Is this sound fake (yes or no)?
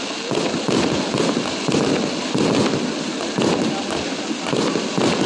no